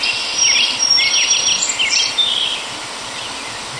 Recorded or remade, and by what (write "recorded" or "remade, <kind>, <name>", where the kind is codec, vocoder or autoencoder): recorded